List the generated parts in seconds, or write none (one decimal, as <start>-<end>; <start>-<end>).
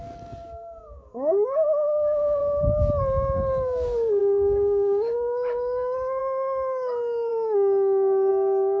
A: 0.0-2.4; 3.0-8.8